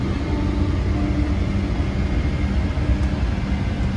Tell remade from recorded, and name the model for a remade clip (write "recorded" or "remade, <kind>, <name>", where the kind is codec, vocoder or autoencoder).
recorded